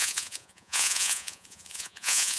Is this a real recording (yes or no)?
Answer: no